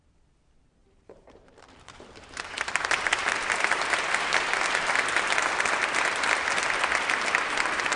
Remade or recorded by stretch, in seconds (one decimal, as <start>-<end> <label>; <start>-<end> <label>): 0.0-0.8 recorded; 0.8-4.5 remade; 4.5-8.0 recorded